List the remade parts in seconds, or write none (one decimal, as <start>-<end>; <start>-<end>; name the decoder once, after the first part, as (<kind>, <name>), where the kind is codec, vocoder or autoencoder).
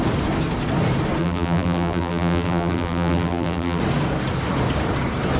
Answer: 1.2-3.8 (vocoder, BigVGAN v2)